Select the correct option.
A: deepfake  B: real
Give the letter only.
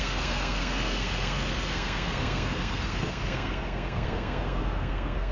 A